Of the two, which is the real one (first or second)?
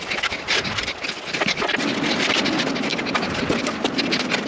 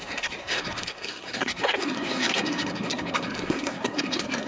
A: first